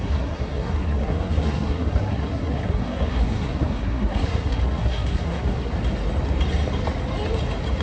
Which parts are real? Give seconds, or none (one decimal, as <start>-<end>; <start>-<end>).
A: 5.7-7.8